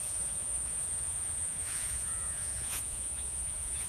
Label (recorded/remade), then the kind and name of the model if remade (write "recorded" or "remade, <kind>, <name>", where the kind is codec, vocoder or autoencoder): remade, vocoder, Vocos